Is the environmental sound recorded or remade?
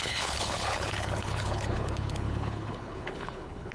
remade